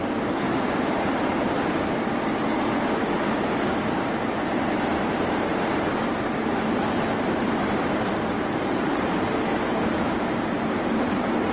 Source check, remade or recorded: remade